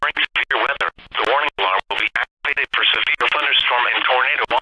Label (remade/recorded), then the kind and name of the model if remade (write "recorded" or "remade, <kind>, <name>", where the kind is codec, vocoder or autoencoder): recorded